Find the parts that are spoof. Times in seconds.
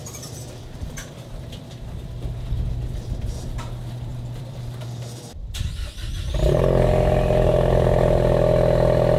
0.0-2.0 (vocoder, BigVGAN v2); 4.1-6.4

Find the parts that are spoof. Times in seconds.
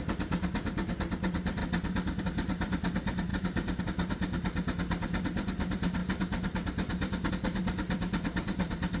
3.3-3.8 (vocoder, BigVGAN v2)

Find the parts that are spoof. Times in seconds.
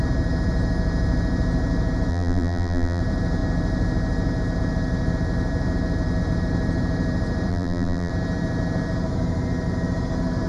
2.1-3.0 (vocoder, BigVGAN v2); 7.5-8.1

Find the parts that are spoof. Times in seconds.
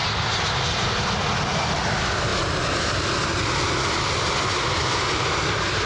none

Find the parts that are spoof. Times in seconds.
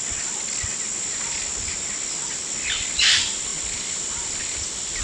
3.5-5.0 (vocoder, BigVGAN v2)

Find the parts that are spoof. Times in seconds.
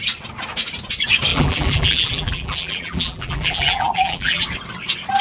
1.3-4.4 (vocoder, BigVGAN v2)